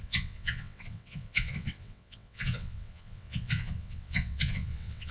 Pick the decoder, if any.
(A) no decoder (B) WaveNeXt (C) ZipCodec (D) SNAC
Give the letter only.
B